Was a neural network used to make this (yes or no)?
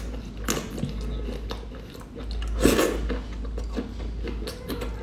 no